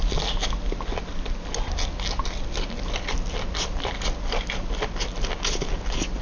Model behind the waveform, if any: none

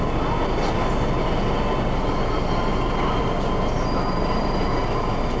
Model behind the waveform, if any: none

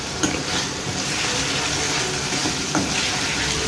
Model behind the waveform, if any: none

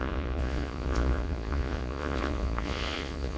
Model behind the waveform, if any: vocoder, Vocos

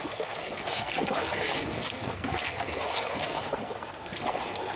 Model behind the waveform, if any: codec, SNAC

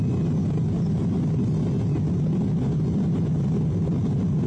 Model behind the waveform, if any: none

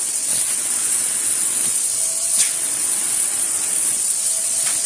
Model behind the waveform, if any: vocoder, WaveNeXt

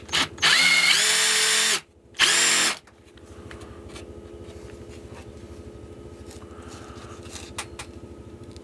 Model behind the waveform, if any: none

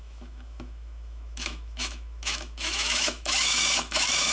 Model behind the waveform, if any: autoencoder, DAC-VAE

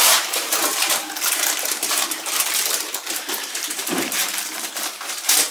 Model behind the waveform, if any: vocoder, BigVGAN v2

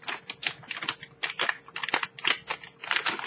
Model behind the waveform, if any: none